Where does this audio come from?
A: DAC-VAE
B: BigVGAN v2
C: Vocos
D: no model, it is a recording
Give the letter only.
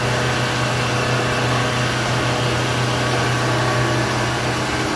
D